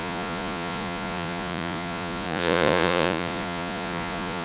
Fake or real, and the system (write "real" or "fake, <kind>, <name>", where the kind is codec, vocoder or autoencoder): fake, vocoder, Vocos